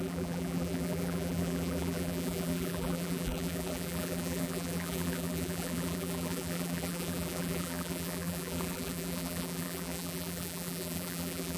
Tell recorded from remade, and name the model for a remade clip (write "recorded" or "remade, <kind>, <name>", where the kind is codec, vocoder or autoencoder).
remade, vocoder, BigVGAN v2